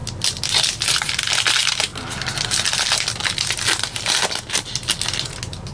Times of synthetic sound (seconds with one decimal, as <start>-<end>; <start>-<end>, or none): none